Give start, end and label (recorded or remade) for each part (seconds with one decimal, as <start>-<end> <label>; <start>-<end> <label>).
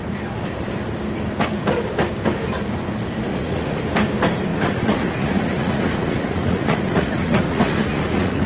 0.0-3.3 recorded; 3.3-3.8 remade; 3.8-4.5 recorded; 4.5-8.5 remade